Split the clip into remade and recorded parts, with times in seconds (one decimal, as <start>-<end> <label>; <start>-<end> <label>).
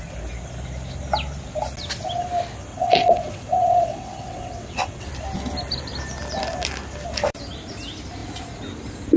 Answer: 0.0-2.7 recorded; 2.7-5.1 remade; 5.1-9.2 recorded